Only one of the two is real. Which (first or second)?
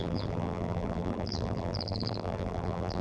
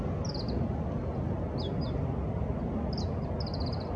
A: second